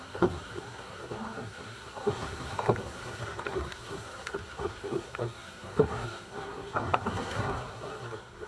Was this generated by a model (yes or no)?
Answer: yes